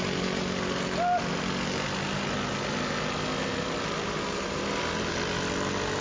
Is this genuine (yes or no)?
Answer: yes